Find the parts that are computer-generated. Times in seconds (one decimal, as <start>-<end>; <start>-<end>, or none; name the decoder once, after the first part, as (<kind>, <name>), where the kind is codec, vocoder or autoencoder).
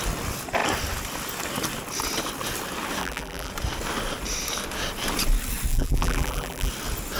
3.0-3.5 (vocoder, BigVGAN v2); 5.7-6.7